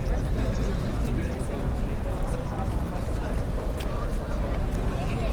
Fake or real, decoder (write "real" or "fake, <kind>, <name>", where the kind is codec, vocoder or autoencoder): real